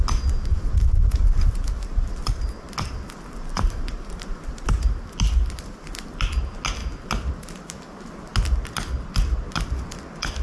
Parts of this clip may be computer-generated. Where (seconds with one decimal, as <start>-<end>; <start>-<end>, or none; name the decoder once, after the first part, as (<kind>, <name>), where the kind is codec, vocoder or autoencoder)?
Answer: 3.9-4.5 (vocoder, BigVGAN v2)